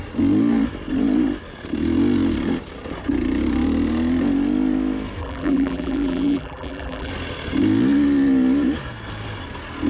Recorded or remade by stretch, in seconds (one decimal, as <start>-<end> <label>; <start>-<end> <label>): 0.0-5.2 recorded; 5.2-7.1 remade; 7.1-9.9 recorded